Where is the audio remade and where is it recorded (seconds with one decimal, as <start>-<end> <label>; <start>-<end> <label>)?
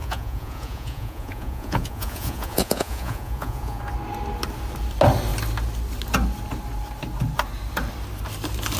0.0-3.8 remade; 3.8-8.8 recorded